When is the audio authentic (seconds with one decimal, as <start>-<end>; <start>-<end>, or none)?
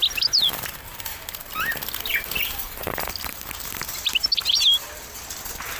0.0-5.8